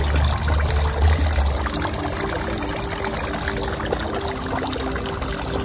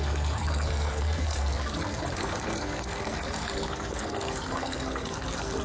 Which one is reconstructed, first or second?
second